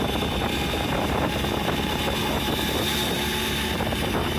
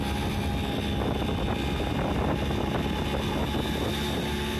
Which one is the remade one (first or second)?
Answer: first